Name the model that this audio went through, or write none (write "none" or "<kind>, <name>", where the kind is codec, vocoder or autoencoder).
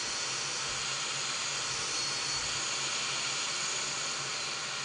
none